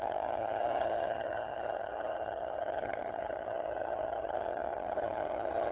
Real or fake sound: fake